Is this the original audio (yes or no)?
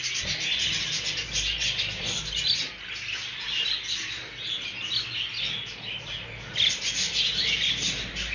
yes